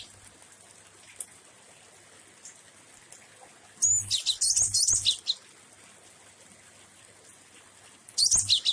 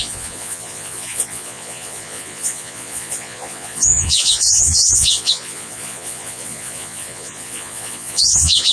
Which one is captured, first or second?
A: first